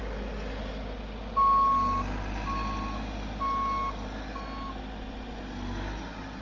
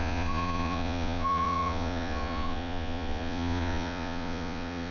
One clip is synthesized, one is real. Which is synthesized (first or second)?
second